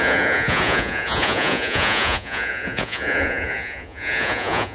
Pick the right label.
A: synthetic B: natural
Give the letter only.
A